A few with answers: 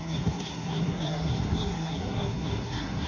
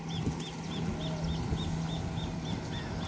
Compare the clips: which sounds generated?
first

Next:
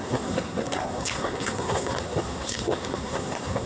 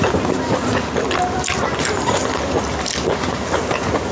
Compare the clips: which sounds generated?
first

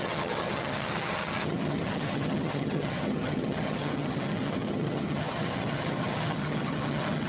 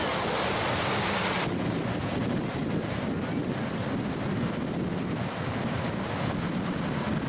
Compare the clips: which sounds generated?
first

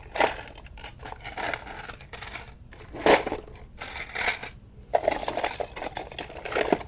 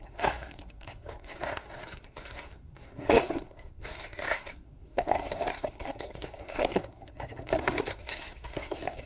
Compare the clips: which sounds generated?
second